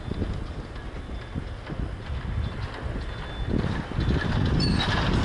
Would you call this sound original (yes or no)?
yes